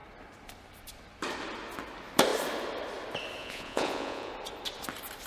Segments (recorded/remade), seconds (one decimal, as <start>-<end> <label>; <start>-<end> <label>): 0.0-3.4 recorded; 3.4-4.3 remade; 4.3-5.3 recorded